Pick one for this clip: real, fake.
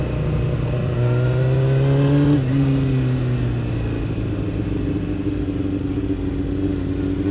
real